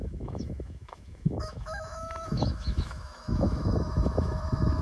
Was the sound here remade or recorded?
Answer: remade